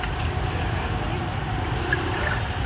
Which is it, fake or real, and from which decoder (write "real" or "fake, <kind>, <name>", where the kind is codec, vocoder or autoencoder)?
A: real